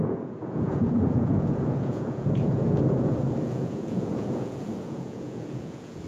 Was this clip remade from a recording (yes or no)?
yes